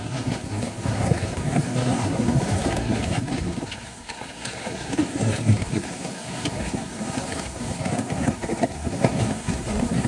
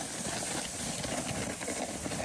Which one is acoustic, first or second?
second